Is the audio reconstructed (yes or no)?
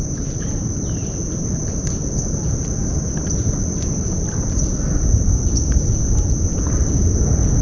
no